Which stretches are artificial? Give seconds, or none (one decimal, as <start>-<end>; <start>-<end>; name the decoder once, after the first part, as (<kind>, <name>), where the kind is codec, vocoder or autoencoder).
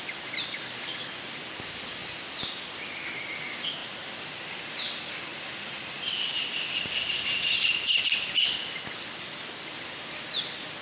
none